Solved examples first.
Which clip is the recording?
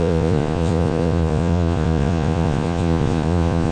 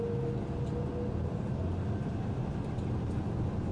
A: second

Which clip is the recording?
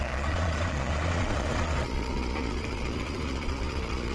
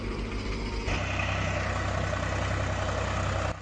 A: second